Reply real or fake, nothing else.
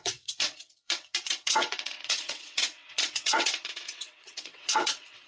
fake